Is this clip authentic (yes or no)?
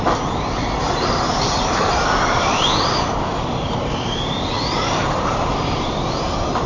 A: no